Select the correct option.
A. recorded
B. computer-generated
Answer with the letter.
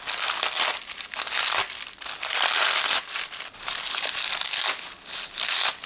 A